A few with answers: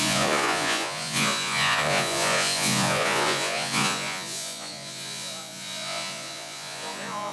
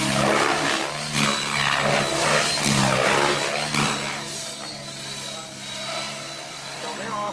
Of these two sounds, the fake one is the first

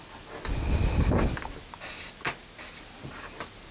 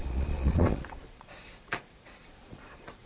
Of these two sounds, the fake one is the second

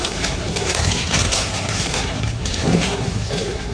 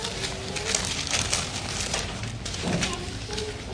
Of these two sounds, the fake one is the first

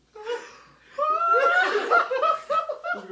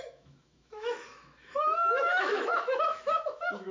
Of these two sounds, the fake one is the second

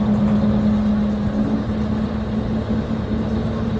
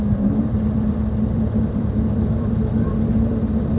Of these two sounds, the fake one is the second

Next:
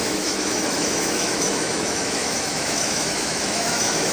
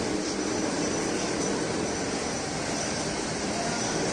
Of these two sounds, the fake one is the first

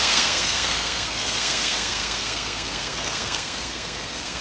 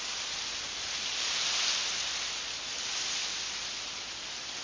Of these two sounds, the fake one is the first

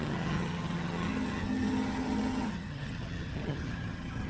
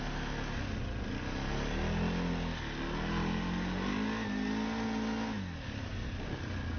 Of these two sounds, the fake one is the first